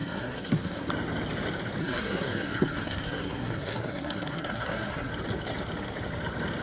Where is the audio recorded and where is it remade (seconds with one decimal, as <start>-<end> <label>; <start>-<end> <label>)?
0.0-0.9 remade; 0.9-1.8 recorded; 1.8-5.1 remade; 5.1-6.6 recorded